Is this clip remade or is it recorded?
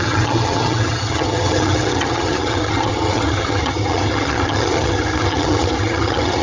remade